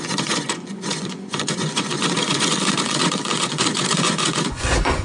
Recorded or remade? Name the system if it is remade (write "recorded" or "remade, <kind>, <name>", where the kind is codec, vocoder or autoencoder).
remade, vocoder, Vocos